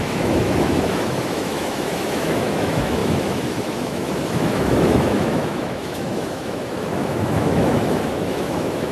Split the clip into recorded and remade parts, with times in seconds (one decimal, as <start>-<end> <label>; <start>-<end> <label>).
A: 0.0-8.9 remade